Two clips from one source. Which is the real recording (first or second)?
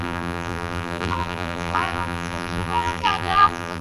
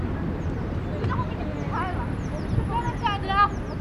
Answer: second